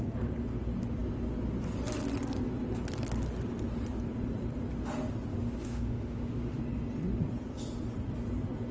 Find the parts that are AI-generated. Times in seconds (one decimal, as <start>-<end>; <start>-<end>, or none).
5.3-6.6